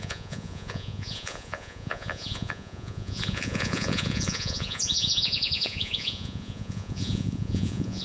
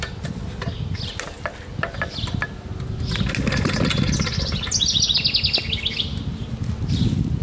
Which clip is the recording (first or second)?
second